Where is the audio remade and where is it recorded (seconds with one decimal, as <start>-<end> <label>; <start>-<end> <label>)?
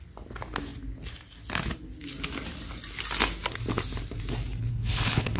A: 0.0-4.7 recorded; 4.7-5.4 remade